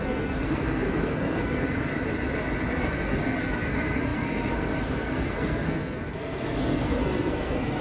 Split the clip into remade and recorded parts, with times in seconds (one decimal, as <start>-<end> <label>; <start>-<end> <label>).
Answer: 0.0-1.9 remade; 1.9-2.8 recorded; 2.8-7.8 remade